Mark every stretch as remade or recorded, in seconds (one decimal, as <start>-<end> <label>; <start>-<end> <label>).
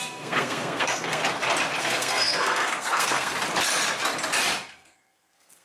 0.0-1.2 remade; 1.2-1.8 recorded; 1.8-3.3 remade; 3.3-4.7 recorded; 4.7-5.6 remade